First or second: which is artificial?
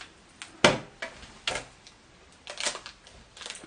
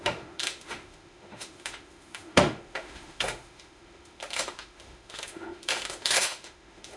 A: second